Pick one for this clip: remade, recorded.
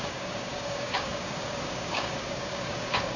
remade